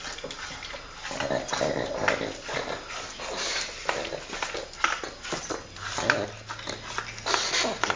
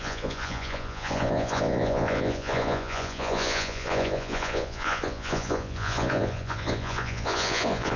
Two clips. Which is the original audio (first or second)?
first